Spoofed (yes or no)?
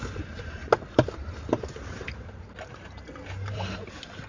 yes